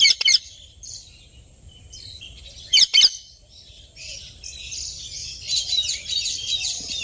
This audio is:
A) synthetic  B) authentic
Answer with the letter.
A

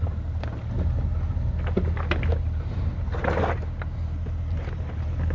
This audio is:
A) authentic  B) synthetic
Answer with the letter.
A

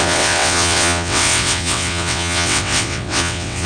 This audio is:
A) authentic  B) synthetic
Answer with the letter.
B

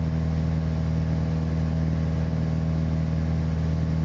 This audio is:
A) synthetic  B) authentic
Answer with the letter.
B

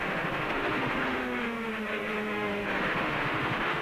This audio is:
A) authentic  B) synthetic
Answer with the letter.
B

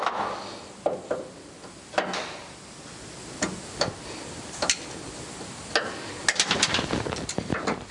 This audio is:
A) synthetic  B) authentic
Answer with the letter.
B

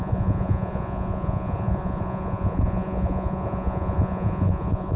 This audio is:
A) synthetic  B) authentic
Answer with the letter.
A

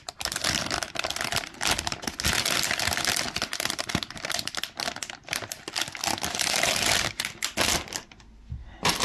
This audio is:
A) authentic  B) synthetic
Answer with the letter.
A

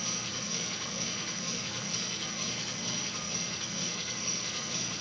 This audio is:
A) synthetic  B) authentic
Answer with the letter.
A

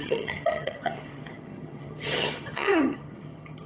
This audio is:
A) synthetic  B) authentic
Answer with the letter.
A